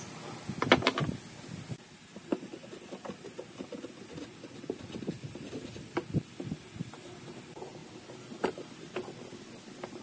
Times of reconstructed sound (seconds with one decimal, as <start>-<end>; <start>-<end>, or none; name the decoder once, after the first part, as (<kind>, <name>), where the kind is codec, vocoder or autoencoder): none